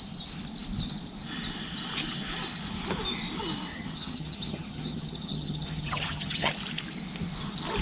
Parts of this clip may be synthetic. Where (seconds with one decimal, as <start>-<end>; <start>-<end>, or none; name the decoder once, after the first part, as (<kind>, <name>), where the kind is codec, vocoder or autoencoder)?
3.7-6.5 (vocoder, HiFi-GAN)